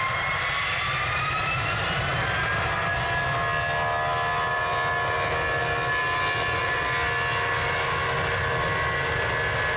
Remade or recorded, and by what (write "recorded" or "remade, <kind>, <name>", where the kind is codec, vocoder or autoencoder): recorded